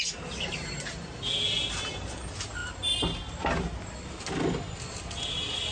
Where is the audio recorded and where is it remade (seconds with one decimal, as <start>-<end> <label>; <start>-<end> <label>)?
0.0-5.7 recorded